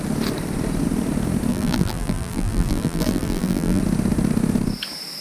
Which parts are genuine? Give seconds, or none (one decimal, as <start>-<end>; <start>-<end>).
0.0-1.5; 3.8-5.2